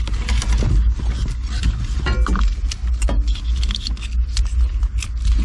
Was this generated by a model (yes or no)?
no